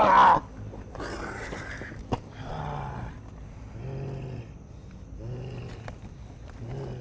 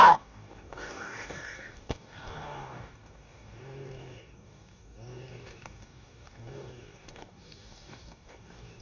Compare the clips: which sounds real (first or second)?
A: first